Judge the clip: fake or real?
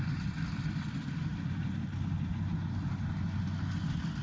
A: real